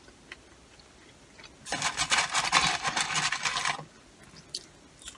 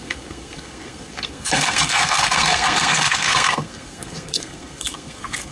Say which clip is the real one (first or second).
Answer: first